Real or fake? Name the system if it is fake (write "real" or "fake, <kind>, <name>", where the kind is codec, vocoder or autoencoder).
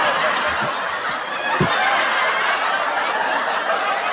real